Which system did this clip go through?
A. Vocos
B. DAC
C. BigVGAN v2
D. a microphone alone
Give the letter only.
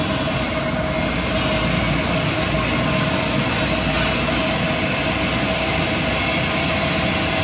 D